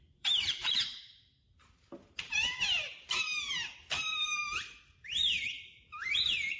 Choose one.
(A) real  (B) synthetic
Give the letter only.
B